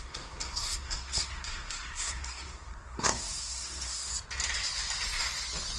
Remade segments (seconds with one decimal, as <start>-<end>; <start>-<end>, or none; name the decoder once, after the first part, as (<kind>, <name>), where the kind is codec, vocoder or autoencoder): 0.0-4.1 (codec, SNAC)